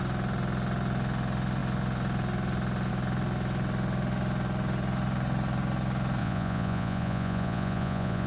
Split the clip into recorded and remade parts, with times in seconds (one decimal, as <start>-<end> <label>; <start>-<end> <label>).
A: 0.0-6.2 recorded; 6.2-8.3 remade